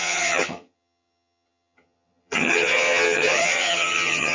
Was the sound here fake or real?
fake